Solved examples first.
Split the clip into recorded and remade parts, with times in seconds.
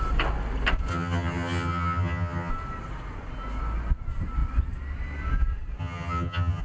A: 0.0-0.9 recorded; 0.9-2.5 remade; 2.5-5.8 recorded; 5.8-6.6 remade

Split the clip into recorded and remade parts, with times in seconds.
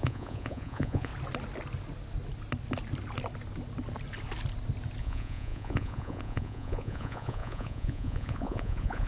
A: 0.0-1.1 remade; 1.1-5.0 recorded; 5.0-9.1 remade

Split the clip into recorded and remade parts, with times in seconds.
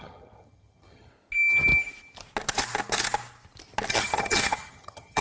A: 0.0-1.1 remade; 1.1-3.9 recorded; 3.9-5.2 remade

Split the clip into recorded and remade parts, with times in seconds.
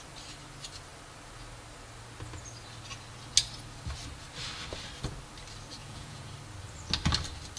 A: 0.0-5.8 recorded; 5.8-6.3 remade; 6.3-7.6 recorded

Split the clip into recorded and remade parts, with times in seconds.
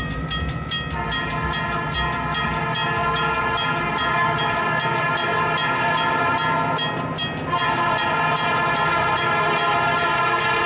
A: 0.0-10.7 recorded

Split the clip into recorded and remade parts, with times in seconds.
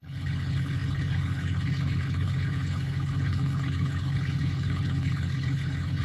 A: 0.0-6.0 remade